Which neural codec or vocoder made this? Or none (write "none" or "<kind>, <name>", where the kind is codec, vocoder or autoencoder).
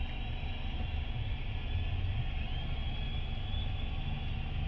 none